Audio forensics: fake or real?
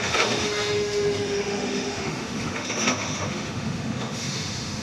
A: fake